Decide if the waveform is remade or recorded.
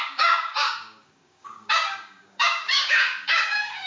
remade